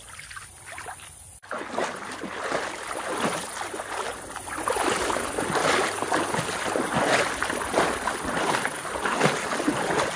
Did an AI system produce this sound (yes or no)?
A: no